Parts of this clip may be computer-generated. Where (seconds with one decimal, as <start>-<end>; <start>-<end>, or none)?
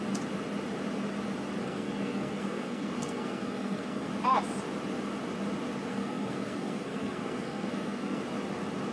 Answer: 1.6-4.1; 5.9-8.2